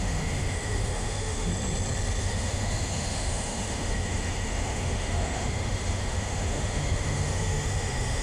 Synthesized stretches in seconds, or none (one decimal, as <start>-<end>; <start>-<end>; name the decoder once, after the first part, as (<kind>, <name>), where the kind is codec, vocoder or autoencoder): 0.0-1.5 (autoencoder, DAC-VAE); 2.2-8.2